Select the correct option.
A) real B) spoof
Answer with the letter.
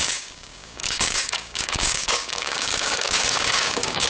B